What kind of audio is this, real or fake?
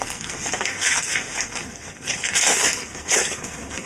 fake